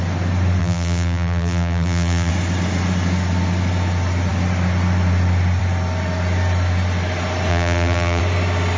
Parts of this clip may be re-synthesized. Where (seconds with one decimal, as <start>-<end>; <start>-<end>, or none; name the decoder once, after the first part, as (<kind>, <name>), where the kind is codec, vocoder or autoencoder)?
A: 0.6-2.3 (vocoder, BigVGAN v2); 7.5-8.2